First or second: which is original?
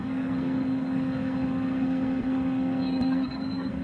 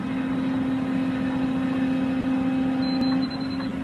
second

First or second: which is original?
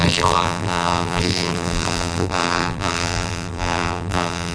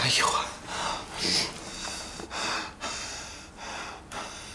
second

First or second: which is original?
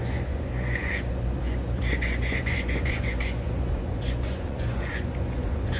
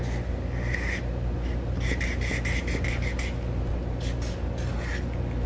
second